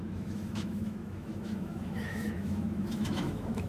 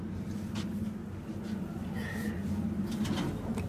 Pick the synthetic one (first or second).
first